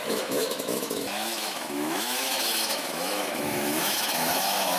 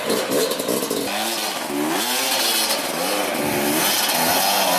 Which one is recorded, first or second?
second